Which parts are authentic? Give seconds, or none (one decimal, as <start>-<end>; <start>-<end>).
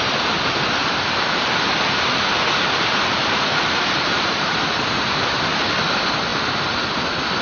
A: 0.0-0.8; 4.7-7.4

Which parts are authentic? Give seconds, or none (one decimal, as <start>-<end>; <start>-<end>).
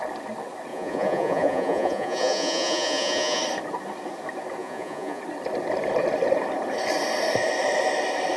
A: 0.0-0.7; 3.4-4.6; 5.2-8.4